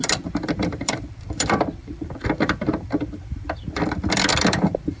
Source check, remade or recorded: remade